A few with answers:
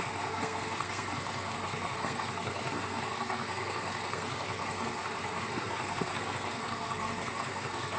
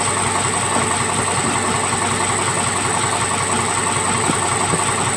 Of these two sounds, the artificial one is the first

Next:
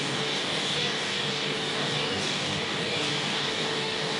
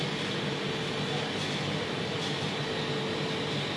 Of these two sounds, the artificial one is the first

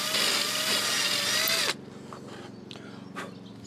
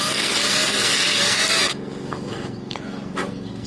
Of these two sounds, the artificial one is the second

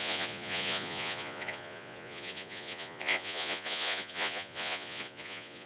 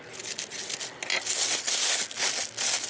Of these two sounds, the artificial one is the first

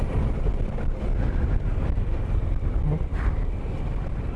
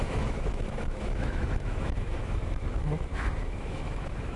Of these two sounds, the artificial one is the second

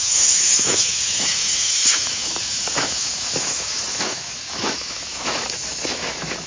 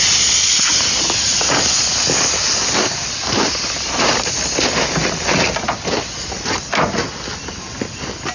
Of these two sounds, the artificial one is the first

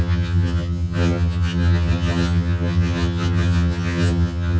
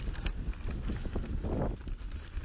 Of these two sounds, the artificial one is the first